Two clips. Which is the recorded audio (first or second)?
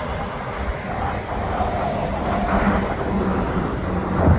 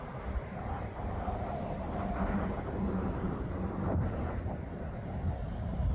first